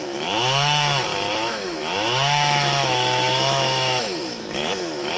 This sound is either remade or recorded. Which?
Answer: remade